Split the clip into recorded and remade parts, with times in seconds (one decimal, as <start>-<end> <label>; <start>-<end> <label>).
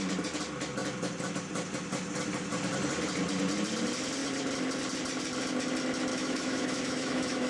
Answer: 0.0-6.1 recorded; 6.1-7.5 remade